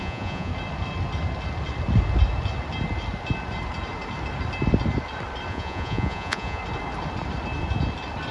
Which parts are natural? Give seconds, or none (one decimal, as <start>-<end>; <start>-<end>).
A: 0.5-5.5; 6.6-8.3